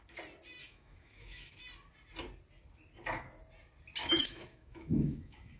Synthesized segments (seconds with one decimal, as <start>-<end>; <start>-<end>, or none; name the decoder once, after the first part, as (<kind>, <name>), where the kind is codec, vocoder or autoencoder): 0.6-1.6 (autoencoder, DAC-VAE); 4.0-5.6